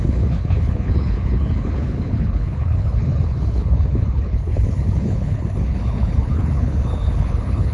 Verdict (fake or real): fake